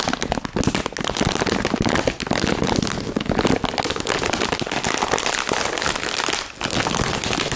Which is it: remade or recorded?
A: recorded